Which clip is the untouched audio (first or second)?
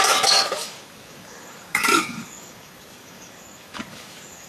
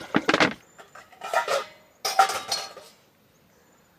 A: second